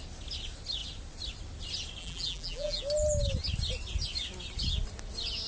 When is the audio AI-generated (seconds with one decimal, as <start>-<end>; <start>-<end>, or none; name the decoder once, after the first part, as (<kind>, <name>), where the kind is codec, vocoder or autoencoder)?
2.0-2.8 (vocoder, BigVGAN v2)

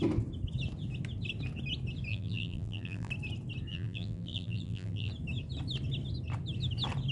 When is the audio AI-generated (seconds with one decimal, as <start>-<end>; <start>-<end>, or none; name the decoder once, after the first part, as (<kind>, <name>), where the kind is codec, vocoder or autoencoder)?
2.1-3.1 (vocoder, BigVGAN v2); 3.7-5.1